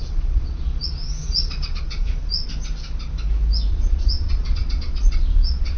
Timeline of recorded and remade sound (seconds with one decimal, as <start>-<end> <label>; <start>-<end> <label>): 0.0-2.5 remade; 2.5-3.7 recorded; 3.7-5.8 remade